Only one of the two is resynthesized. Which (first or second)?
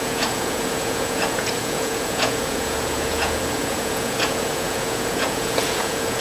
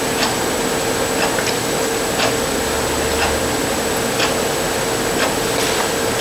first